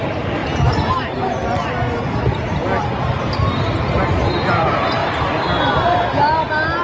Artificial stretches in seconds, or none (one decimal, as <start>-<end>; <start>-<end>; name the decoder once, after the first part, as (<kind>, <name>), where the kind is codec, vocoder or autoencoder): none